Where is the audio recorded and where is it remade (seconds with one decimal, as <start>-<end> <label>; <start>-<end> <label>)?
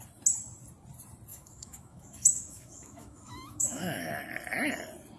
0.0-1.3 recorded; 1.3-4.1 remade; 4.1-5.2 recorded